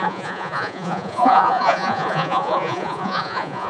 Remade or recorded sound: remade